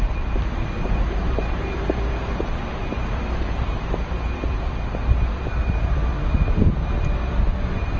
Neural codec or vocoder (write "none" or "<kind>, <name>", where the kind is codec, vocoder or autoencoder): vocoder, BigVGAN v2